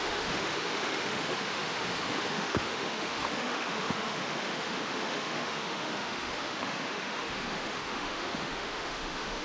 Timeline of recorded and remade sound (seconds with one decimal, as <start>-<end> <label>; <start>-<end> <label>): 0.0-9.4 remade

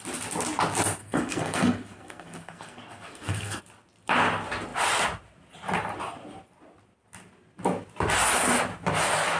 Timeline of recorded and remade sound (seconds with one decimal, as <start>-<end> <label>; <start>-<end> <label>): 0.0-1.0 recorded; 1.0-3.6 remade; 3.6-9.4 recorded

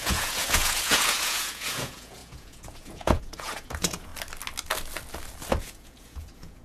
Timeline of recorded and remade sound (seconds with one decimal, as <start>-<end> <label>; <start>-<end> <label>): 0.0-4.1 remade; 4.1-5.6 recorded; 5.6-6.6 remade

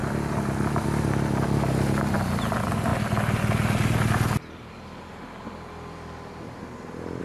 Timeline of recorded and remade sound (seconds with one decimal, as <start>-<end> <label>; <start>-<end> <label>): 0.0-2.0 recorded; 2.0-2.9 remade; 2.9-7.2 recorded

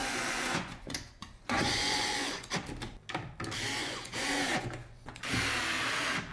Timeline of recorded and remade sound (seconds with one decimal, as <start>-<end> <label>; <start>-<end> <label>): 0.0-2.5 remade; 2.5-3.8 recorded; 3.8-5.3 remade; 5.3-6.3 recorded

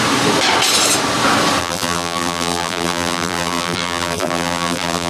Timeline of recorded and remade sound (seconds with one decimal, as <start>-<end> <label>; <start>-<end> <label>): 0.0-1.6 recorded; 1.6-5.1 remade

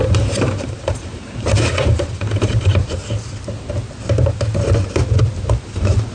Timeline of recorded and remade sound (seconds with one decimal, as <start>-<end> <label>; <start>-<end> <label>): 0.0-3.0 remade; 3.0-5.6 recorded; 5.6-6.1 remade

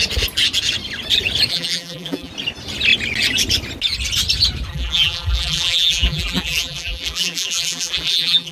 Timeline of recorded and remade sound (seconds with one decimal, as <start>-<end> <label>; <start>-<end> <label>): 0.0-1.5 recorded; 1.5-2.3 remade; 2.3-4.7 recorded; 4.7-8.5 remade